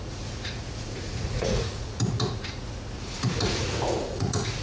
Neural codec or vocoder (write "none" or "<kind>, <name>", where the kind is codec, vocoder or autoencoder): vocoder, Vocos